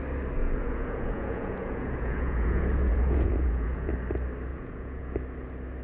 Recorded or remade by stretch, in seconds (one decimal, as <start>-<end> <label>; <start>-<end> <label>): 0.0-0.4 recorded; 0.4-3.9 remade; 3.9-4.5 recorded; 4.5-5.1 remade; 5.1-5.8 recorded